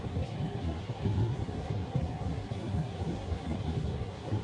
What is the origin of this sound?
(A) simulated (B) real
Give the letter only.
A